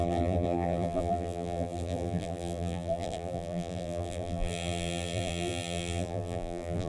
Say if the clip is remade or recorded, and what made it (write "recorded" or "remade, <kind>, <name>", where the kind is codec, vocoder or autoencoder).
remade, vocoder, BigVGAN v2